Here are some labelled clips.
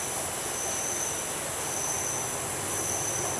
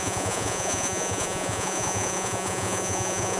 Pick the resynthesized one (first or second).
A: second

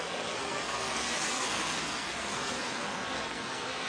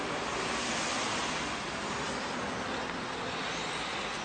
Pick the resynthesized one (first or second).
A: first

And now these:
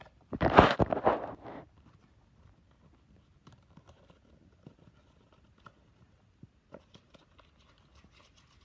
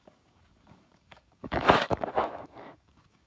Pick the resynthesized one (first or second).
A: second